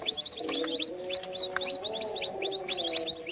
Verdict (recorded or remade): recorded